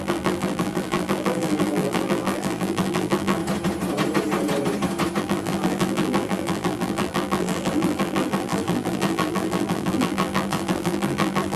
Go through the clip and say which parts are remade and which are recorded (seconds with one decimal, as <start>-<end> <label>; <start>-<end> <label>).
0.0-3.4 remade; 3.4-5.2 recorded; 5.2-11.6 remade